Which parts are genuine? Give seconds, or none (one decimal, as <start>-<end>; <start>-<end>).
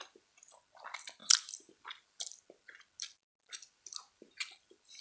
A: 0.0-5.0